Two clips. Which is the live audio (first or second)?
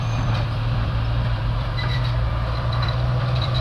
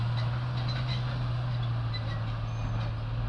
second